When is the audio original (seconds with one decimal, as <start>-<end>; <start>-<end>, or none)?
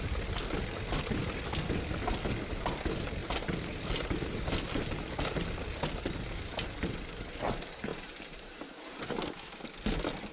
0.0-10.3